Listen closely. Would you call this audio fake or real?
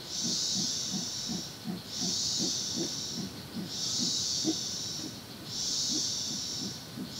real